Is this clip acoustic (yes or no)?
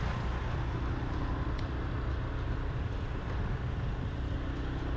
yes